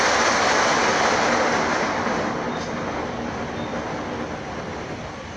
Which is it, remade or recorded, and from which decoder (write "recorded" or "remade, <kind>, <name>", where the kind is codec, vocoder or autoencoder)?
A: recorded